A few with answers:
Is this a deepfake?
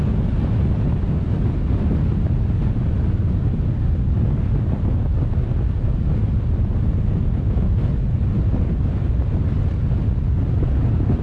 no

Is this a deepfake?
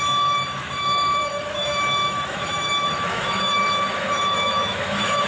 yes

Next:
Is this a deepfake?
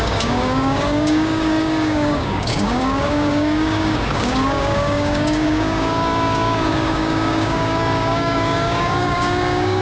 yes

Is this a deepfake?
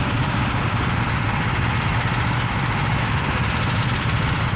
no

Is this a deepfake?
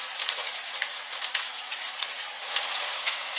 yes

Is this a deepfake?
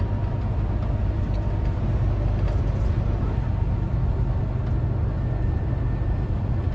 no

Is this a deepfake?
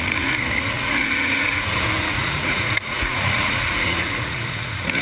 yes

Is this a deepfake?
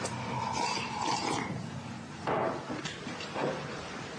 yes